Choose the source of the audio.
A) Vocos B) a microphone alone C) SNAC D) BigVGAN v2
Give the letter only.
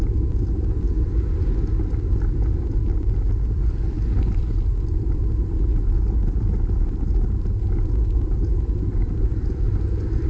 D